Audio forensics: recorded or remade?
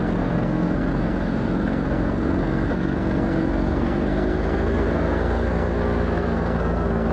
remade